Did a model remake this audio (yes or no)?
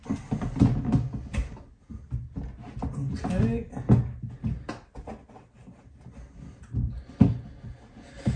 no